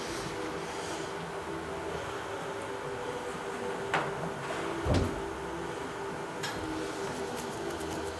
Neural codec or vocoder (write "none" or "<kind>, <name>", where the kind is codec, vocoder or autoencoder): none